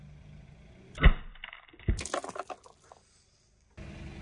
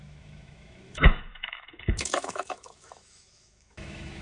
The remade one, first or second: second